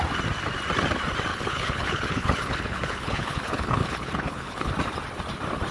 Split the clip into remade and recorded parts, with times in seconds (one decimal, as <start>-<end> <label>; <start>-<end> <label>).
0.0-1.3 recorded; 1.3-4.7 remade; 4.7-5.7 recorded